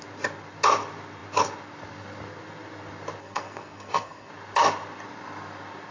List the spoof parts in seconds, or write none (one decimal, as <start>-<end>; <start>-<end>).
3.2-4.3

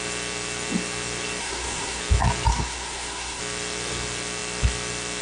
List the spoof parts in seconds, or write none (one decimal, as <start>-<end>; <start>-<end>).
1.4-2.0; 2.5-3.4

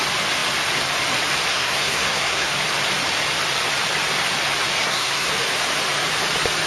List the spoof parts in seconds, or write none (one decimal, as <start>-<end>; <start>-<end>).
1.5-2.5; 4.8-5.3

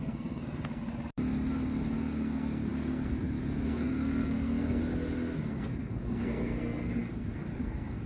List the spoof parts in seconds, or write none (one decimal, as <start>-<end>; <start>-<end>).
0.0-0.9; 2.0-4.8; 5.4-8.1

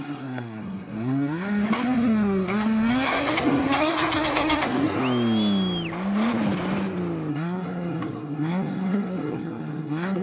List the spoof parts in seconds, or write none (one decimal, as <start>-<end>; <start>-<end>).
0.0-5.0; 7.3-10.2

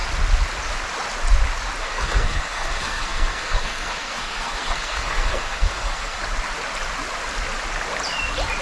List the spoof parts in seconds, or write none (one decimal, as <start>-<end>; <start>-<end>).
1.8-6.2